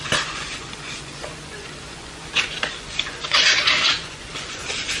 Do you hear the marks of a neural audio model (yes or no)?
yes